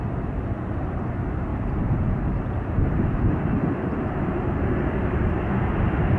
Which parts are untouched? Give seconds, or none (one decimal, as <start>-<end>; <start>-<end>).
0.0-1.5; 3.6-4.4; 5.2-6.2